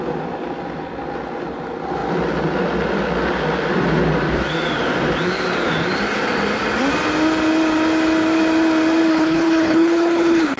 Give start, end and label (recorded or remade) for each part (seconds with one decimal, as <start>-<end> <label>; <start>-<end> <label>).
0.0-9.1 recorded; 9.1-10.6 remade